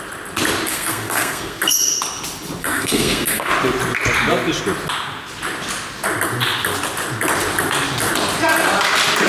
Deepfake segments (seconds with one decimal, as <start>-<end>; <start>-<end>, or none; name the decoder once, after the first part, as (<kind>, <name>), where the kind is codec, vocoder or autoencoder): 0.7-1.6 (codec, SNAC); 2.6-3.5